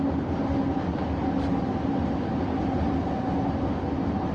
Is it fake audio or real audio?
real